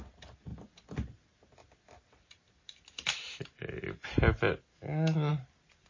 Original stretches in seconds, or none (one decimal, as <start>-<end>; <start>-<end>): 0.0-4.7; 5.3-5.9